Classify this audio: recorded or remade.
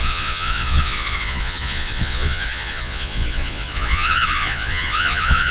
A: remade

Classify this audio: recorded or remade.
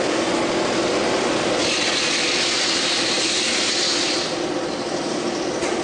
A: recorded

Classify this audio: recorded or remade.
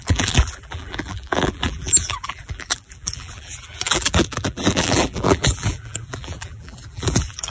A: remade